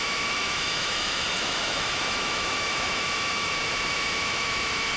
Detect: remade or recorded remade